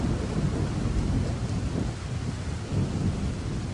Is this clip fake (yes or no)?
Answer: no